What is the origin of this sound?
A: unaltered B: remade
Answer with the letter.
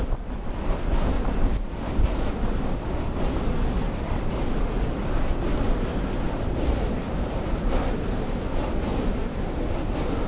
A